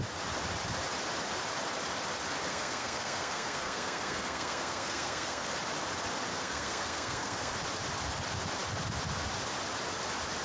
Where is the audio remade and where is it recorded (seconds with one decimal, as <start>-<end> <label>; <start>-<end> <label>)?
0.0-2.5 recorded; 2.5-5.5 remade; 5.5-6.3 recorded; 6.3-7.5 remade; 7.5-10.4 recorded